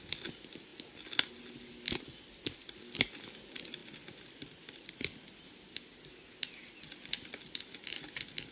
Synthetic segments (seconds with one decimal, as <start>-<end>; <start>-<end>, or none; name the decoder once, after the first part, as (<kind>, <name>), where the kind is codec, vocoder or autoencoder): 0.7-1.4 (vocoder, BigVGAN v2); 3.8-8.1